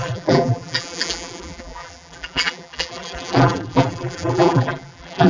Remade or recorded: remade